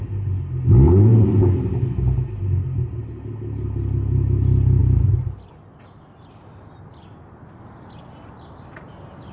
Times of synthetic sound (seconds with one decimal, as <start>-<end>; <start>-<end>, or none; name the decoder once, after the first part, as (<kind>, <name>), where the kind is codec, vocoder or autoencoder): none